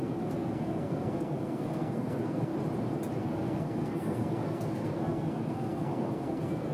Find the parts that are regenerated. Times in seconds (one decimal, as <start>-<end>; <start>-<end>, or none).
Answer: 0.0-2.5; 3.2-6.7